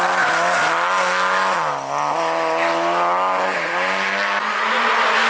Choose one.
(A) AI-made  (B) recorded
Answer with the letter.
B